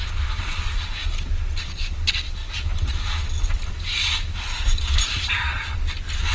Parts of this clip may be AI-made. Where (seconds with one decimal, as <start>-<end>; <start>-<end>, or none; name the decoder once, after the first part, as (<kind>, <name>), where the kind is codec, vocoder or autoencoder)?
none